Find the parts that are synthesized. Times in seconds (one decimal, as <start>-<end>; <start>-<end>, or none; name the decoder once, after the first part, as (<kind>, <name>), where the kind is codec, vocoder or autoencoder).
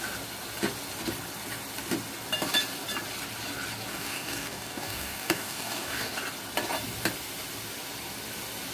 3.9-6.1 (codec, DAC)